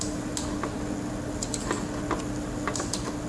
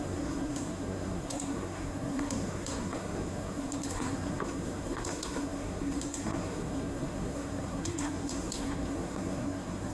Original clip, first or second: first